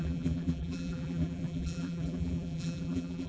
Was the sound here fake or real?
fake